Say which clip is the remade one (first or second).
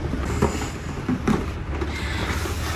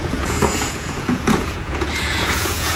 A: second